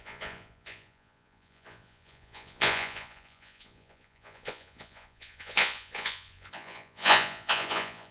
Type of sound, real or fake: fake